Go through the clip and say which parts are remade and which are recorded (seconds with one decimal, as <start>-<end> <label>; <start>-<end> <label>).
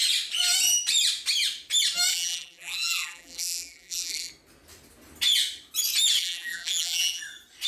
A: 0.0-2.1 recorded; 2.1-4.3 remade; 4.3-6.2 recorded; 6.2-7.2 remade; 7.2-7.7 recorded